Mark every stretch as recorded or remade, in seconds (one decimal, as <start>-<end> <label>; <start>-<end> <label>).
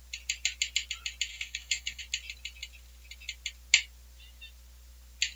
0.0-1.3 recorded; 1.3-2.0 remade; 2.0-5.4 recorded